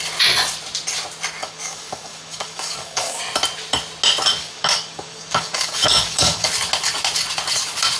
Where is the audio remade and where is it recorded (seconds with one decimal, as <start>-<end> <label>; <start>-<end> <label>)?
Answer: 0.0-1.4 recorded; 1.4-3.2 remade; 3.2-4.4 recorded; 4.4-6.5 remade; 6.5-8.0 recorded